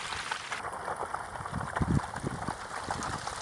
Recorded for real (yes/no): yes